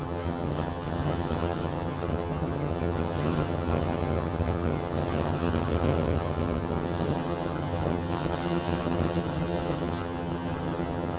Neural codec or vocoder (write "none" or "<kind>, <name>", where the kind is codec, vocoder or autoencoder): vocoder, HiFi-GAN